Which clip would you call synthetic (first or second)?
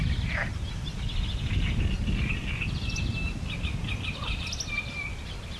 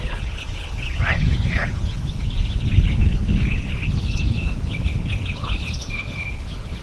second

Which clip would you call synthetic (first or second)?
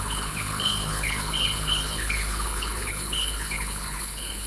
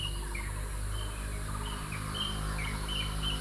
first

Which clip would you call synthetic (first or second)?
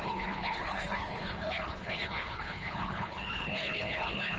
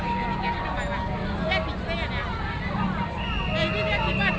first